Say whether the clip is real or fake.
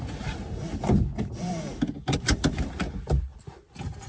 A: real